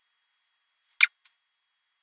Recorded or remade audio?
recorded